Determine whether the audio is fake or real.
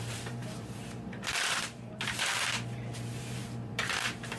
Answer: fake